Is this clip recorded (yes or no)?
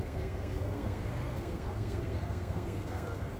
no